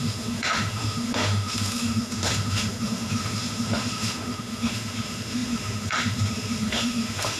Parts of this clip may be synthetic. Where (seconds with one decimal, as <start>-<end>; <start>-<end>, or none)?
0.0-7.4